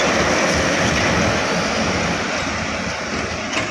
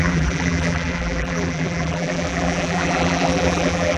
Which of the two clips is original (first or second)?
first